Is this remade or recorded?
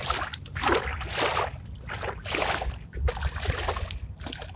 recorded